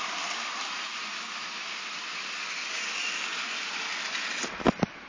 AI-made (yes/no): no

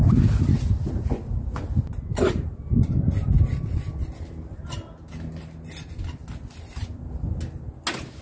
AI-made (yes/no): no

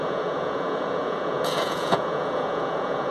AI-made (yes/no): yes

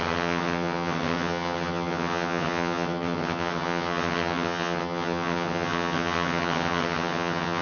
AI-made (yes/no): yes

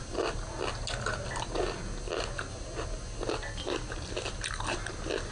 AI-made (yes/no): no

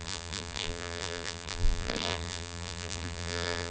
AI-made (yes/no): yes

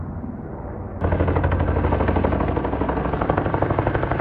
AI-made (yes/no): no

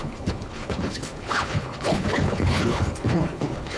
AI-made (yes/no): yes